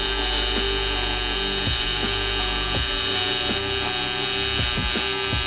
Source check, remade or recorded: recorded